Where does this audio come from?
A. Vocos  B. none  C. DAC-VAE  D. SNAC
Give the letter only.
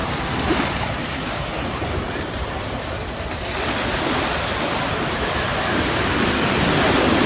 B